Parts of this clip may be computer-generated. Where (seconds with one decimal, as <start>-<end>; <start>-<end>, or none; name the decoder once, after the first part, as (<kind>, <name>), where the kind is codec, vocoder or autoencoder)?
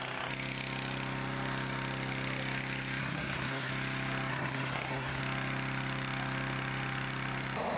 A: 3.0-3.7 (codec, SNAC); 4.3-5.2